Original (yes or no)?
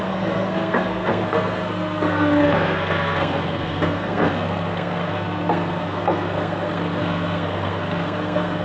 no